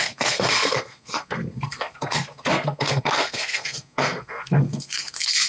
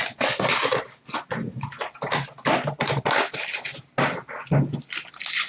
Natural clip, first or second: second